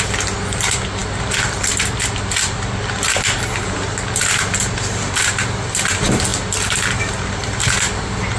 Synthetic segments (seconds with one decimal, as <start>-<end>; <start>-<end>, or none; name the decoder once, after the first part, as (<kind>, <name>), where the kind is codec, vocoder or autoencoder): none